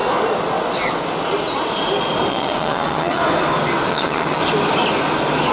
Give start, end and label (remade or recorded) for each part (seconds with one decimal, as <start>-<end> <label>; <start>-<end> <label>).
0.0-2.3 recorded; 2.3-3.2 remade; 3.2-3.9 recorded; 3.9-4.4 remade; 4.4-5.5 recorded